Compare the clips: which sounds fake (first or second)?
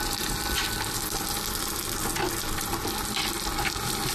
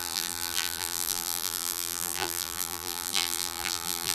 second